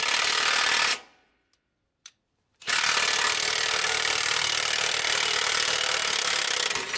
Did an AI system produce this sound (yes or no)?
yes